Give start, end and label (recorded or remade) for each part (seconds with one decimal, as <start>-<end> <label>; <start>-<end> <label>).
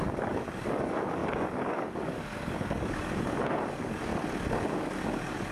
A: 0.0-4.1 remade; 4.1-4.6 recorded; 4.6-5.5 remade